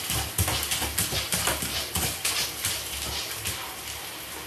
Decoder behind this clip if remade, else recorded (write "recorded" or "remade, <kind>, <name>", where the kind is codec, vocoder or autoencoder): recorded